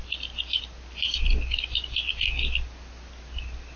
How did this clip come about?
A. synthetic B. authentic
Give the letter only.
B